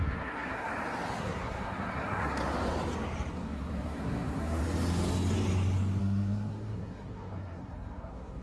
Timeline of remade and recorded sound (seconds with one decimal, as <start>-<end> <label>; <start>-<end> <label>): 0.0-0.7 remade; 0.7-1.2 recorded; 1.2-2.4 remade; 2.4-3.3 recorded; 3.3-4.6 remade; 4.6-6.0 recorded; 6.0-8.4 remade